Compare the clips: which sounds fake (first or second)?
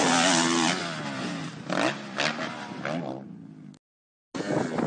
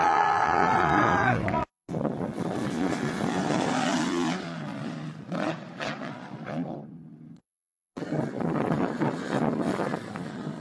second